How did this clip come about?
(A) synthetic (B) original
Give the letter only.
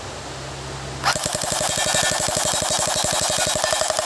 B